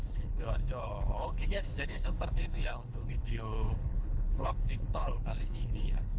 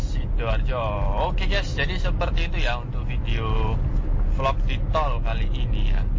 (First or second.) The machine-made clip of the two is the first